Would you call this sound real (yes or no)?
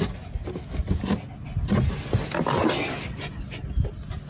yes